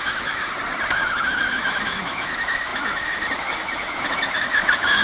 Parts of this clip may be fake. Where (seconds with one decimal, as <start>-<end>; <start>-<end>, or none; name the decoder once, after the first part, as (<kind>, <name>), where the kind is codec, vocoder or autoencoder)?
0.0-0.4 (autoencoder, DAC-VAE); 0.9-5.0

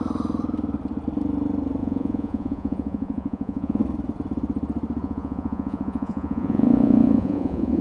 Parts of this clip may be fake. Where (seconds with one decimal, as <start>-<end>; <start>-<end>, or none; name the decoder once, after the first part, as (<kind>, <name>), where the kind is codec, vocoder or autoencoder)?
1.8-3.8 (vocoder, Vocos); 5.0-7.8